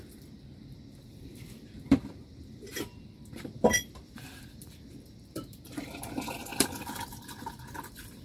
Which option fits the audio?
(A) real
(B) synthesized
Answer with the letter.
B